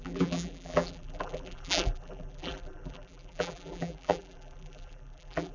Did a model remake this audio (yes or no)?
yes